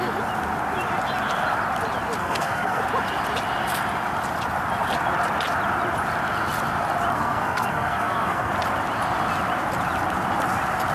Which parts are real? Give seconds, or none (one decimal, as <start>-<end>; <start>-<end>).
0.0-2.2; 2.8-7.1; 8.5-10.9